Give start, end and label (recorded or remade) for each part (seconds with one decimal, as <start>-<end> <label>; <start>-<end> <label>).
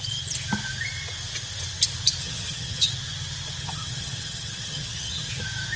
0.0-2.2 recorded; 2.2-2.9 remade; 2.9-3.6 recorded; 3.6-5.3 remade; 5.3-5.8 recorded